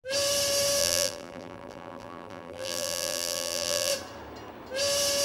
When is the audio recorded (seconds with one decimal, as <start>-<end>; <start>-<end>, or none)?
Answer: 0.0-0.8; 3.9-5.2